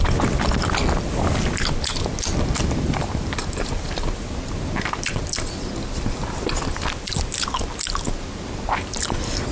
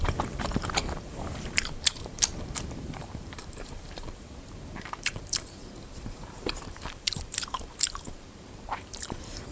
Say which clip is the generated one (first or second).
second